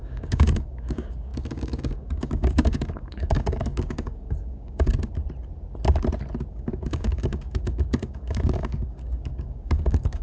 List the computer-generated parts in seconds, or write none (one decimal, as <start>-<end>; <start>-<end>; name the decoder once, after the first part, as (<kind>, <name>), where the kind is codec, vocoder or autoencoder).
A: 0.0-4.9 (codec, DAC); 6.5-10.2